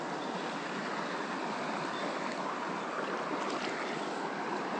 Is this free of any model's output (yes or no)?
yes